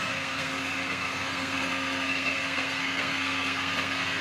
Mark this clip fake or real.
fake